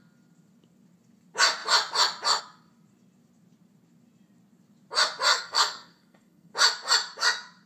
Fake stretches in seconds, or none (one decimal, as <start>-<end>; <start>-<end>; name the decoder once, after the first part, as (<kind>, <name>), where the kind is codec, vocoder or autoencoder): 5.3-6.5 (codec, SNAC)

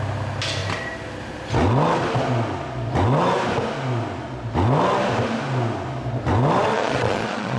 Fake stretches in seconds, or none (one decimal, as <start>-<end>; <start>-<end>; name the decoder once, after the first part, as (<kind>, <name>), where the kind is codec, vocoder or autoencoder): 6.7-7.6 (vocoder, Vocos)

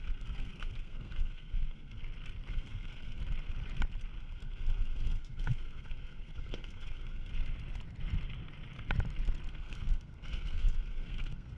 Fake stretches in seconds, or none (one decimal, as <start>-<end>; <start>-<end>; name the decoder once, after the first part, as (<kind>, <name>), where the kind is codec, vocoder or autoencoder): 0.0-2.0 (codec, SNAC); 2.5-3.2; 4.2-7.3; 9.5-11.6